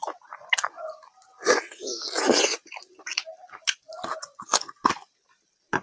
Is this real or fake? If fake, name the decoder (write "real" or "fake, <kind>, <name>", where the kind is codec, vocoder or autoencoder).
real